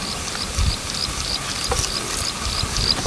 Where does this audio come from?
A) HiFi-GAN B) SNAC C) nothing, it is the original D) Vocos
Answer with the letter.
C